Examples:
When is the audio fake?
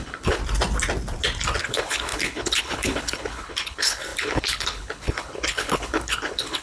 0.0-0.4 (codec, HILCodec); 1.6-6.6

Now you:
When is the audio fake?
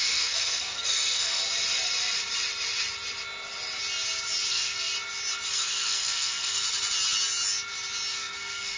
0.0-1.4 (codec, SNAC); 4.5-4.9; 5.5-6.6; 8.1-8.8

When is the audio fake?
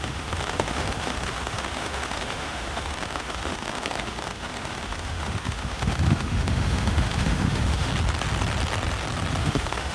0.0-7.9 (autoencoder, DAC-VAE); 9.4-9.9